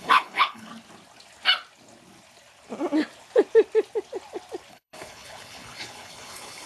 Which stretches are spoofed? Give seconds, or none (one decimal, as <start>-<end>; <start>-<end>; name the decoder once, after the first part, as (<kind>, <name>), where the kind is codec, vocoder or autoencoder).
0.0-0.7 (codec, HILCodec); 4.7-6.7